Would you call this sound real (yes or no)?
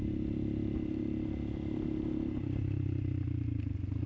yes